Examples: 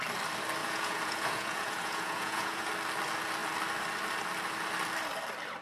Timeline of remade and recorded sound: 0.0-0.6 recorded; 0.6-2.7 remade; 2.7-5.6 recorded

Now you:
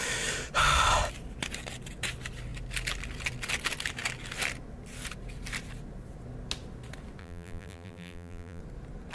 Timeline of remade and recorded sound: 0.0-7.2 recorded; 7.2-8.6 remade; 8.6-9.1 recorded

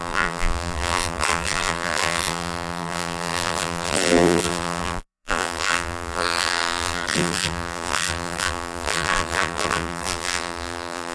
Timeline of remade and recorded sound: 0.0-11.1 remade

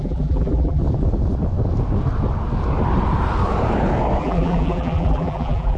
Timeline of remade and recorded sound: 0.0-0.8 remade; 0.8-4.2 recorded; 4.2-5.8 remade

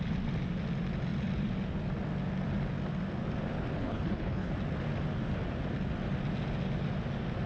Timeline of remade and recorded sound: 0.0-3.8 recorded; 3.8-4.5 remade; 4.5-7.5 recorded

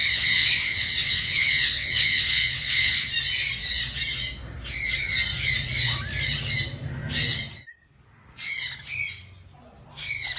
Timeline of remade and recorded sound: 0.0-3.1 remade; 3.1-10.4 recorded